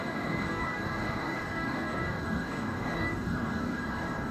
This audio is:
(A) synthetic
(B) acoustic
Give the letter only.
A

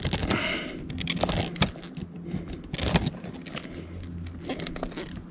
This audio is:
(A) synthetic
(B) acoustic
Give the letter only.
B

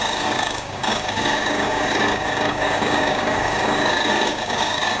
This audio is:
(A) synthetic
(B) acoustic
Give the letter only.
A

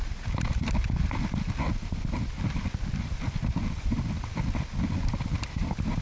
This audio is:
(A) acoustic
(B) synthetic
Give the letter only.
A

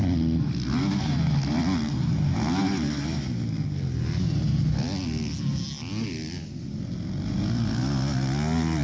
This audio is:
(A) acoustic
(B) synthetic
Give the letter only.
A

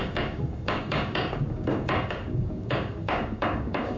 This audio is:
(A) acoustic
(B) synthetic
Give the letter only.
B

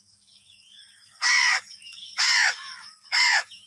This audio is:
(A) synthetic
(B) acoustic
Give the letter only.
A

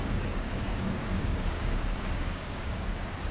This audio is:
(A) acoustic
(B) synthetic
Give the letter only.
B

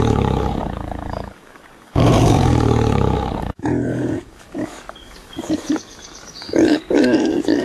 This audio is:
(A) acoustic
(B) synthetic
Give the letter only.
B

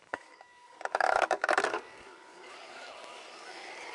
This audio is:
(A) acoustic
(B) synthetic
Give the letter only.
B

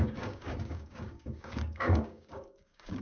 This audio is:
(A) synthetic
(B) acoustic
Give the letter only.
A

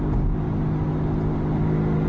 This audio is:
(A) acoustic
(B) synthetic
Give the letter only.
A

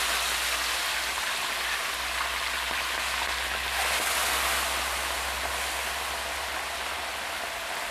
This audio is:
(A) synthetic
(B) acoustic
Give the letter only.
B